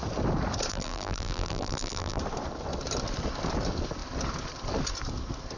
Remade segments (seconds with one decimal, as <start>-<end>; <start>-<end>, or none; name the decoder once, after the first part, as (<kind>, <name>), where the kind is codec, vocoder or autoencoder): 0.7-2.2 (vocoder, BigVGAN v2)